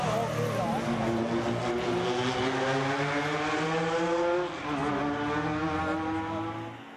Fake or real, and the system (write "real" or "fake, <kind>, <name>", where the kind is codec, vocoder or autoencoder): real